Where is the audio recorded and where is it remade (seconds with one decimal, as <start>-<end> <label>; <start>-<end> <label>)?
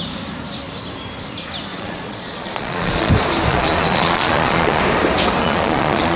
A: 0.0-1.7 recorded; 1.7-3.1 remade; 3.1-3.5 recorded; 3.5-4.8 remade; 4.8-5.4 recorded; 5.4-6.2 remade